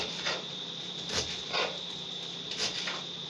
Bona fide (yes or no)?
no